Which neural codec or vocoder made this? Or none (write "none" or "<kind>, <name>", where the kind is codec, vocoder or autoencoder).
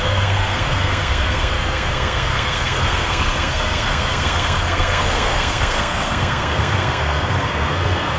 codec, SNAC